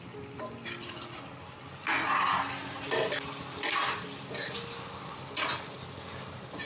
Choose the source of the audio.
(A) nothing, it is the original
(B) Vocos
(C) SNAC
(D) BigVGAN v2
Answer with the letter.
A